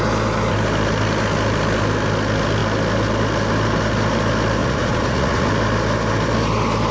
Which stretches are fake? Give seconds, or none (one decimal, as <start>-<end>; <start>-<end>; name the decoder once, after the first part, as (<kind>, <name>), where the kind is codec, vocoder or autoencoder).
4.6-5.5 (vocoder, Vocos)